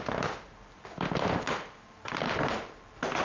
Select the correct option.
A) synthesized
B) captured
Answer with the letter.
B